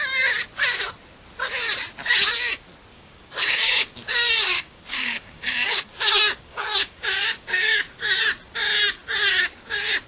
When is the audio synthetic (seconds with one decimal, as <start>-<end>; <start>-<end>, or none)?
2.9-8.2